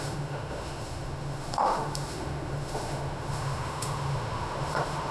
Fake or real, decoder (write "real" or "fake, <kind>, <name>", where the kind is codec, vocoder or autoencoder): fake, autoencoder, DAC-VAE